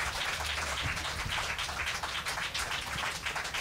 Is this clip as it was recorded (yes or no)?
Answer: no